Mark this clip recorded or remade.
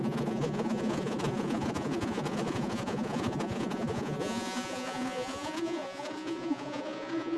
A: remade